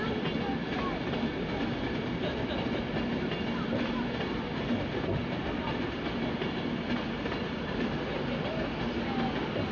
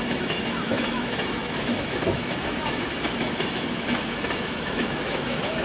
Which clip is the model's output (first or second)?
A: second